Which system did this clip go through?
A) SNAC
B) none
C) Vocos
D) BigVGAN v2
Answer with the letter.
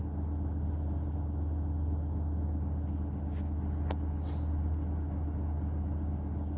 B